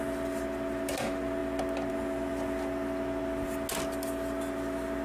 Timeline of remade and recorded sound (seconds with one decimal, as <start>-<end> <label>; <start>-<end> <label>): 0.0-5.0 recorded